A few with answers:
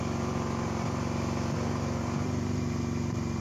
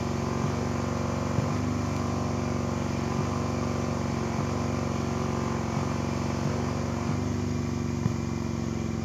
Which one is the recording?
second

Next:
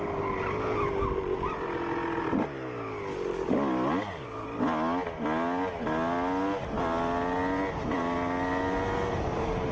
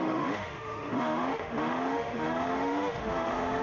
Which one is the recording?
first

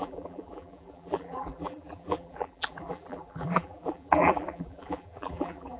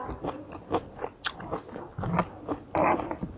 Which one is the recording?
second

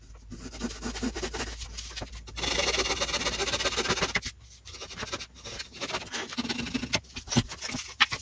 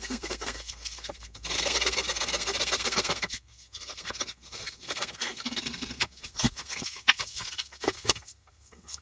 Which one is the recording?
first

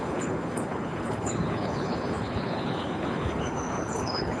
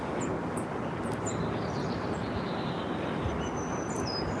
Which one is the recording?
second